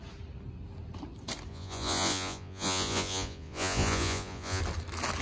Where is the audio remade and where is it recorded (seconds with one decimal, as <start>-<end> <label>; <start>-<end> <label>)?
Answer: 0.0-1.5 recorded; 1.5-4.6 remade; 4.6-5.2 recorded